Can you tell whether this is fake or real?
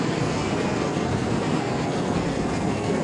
fake